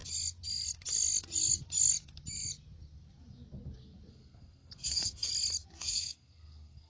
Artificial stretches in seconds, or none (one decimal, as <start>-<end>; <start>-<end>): 4.1-5.3; 5.8-6.9

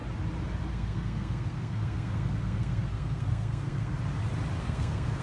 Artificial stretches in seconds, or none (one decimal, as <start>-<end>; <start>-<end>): 0.7-3.9; 4.6-5.2

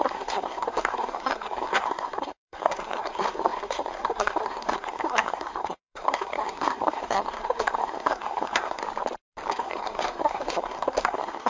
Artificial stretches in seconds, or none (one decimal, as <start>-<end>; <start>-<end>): 0.0-8.8; 9.5-11.5

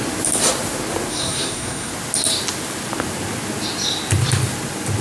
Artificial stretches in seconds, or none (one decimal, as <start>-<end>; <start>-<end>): 1.1-1.9

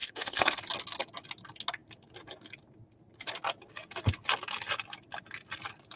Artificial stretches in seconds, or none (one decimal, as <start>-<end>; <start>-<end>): 0.0-0.6